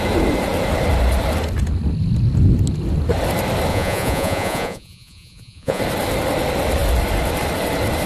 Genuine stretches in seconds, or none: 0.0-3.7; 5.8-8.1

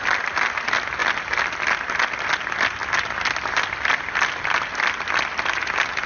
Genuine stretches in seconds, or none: 0.0-6.1

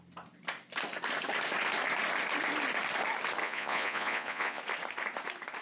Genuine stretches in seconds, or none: 0.0-3.4; 4.6-5.6

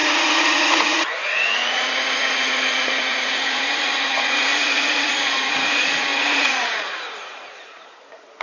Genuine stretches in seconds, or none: none

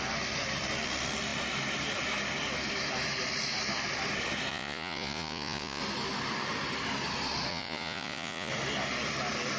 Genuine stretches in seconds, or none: 0.0-4.5; 5.8-7.5; 8.5-9.6

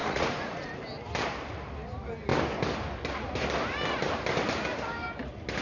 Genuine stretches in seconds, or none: 0.8-5.6

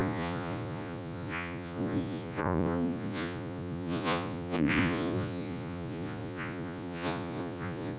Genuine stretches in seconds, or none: none